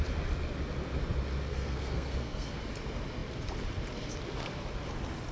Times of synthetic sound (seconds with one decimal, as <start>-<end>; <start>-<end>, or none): 1.5-2.6